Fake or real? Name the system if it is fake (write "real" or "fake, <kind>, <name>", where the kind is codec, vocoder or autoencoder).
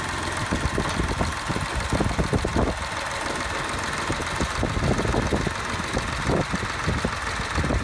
real